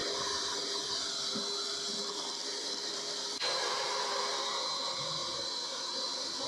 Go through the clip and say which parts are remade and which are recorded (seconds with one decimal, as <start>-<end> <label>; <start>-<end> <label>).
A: 0.0-2.4 recorded; 2.4-4.3 remade; 4.3-5.2 recorded; 5.2-6.5 remade